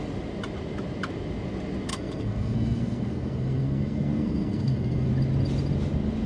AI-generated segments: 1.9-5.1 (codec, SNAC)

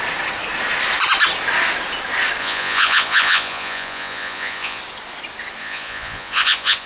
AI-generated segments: 2.4-4.8 (vocoder, Vocos); 5.6-6.9

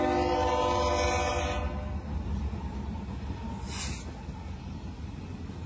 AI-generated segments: none

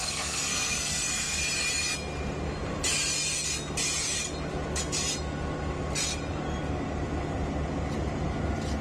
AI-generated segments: 0.0-1.4 (codec, SNAC)

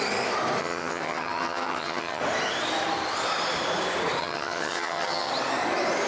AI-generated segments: 0.6-2.2 (vocoder, HiFi-GAN); 4.2-5.3

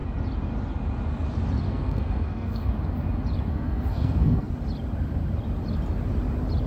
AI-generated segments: 1.7-2.7 (codec, SNAC); 3.5-4.5